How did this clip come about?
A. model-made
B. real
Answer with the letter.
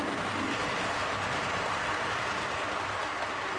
B